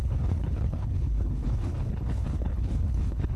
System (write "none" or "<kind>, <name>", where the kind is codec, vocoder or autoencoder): codec, HILCodec